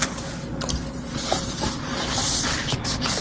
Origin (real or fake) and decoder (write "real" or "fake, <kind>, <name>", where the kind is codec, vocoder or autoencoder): real